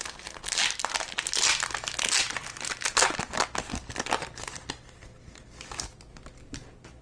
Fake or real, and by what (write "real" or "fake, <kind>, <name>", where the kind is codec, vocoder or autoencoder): real